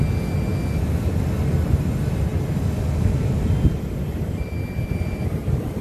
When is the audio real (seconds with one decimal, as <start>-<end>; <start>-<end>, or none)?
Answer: 0.0-5.8